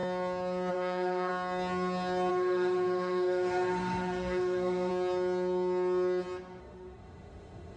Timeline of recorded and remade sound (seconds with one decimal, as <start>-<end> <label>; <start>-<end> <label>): 0.0-0.7 recorded; 0.7-1.3 remade; 1.3-2.3 recorded; 2.3-4.9 remade; 4.9-6.6 recorded; 6.6-7.8 remade